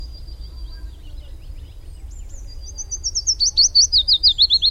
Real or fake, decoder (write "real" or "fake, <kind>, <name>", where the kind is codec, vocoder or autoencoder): real